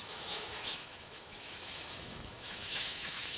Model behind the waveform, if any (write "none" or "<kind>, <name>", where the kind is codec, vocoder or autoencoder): autoencoder, DAC-VAE